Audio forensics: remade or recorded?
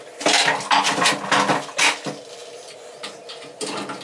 recorded